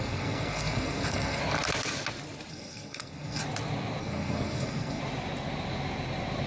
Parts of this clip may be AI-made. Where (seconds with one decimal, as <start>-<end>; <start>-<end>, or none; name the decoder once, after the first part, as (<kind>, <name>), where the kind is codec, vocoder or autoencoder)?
0.0-1.4 (codec, SNAC); 2.5-3.4; 4.0-5.0